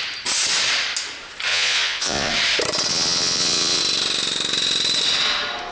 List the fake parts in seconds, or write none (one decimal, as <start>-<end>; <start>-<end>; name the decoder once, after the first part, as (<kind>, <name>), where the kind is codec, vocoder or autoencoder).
1.5-2.3 (vocoder, Vocos); 2.9-3.8

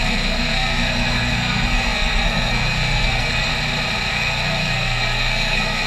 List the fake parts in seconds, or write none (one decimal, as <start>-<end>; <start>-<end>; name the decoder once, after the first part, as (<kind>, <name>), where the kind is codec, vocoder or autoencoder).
0.0-3.5 (codec, SNAC); 4.1-5.9

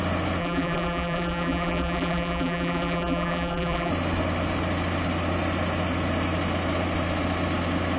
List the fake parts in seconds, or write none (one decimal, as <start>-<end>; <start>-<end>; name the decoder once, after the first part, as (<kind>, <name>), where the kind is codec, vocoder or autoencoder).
0.4-3.9 (vocoder, BigVGAN v2)